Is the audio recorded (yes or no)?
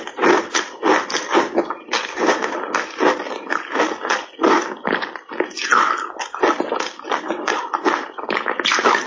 yes